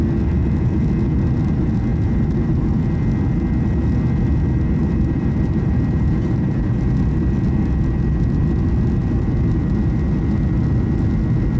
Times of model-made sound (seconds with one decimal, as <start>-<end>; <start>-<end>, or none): 1.9-2.8; 4.8-7.3